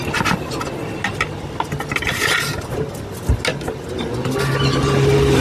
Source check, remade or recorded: recorded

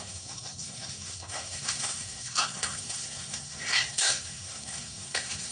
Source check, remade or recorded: remade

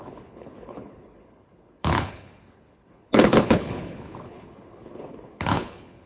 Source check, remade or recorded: remade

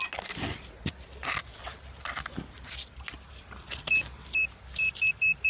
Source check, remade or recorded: recorded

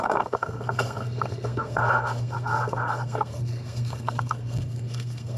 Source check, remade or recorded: remade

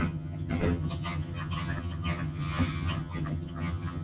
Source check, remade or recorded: remade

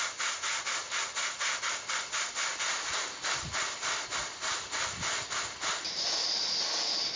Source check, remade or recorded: recorded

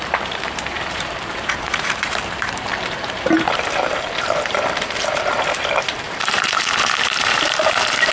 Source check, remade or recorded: remade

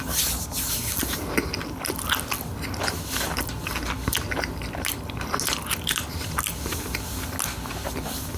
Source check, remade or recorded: recorded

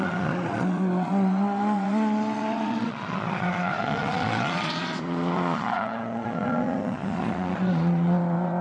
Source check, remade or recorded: remade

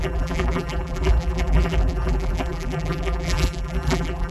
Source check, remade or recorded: remade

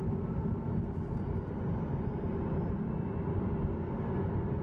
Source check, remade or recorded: recorded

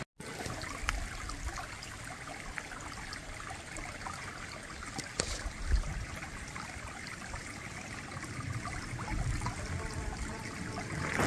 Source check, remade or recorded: recorded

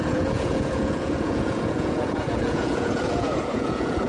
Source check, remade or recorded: remade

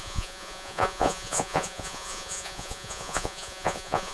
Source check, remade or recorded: remade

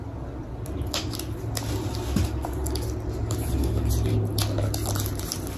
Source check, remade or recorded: recorded